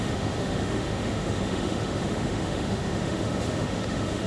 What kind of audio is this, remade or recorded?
remade